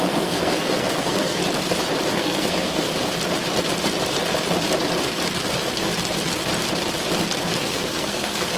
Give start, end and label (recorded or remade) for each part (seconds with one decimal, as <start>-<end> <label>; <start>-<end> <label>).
0.0-1.4 remade; 1.4-2.1 recorded; 2.1-2.9 remade; 2.9-7.6 recorded; 7.6-8.6 remade